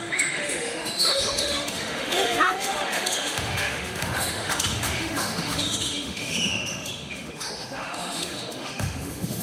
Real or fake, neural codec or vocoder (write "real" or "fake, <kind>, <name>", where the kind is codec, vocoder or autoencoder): fake, autoencoder, DAC-VAE